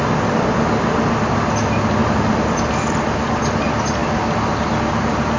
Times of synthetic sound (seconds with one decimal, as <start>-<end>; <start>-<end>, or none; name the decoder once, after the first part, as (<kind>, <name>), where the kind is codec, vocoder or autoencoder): none